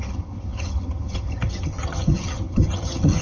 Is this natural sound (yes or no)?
no